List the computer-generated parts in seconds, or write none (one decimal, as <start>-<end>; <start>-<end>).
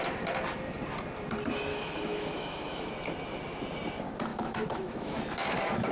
1.7-2.9; 4.3-5.2